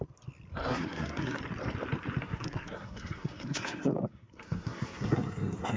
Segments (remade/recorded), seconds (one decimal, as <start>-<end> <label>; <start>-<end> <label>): 0.0-0.6 recorded; 0.6-1.4 remade; 1.4-2.2 recorded; 2.2-5.8 remade